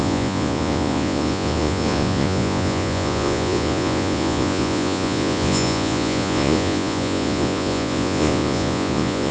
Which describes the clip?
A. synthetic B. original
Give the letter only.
A